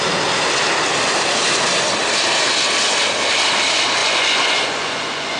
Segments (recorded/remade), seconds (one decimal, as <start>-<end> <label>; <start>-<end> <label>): 0.0-4.0 recorded; 4.0-5.4 remade